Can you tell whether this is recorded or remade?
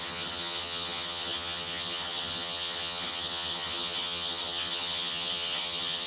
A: remade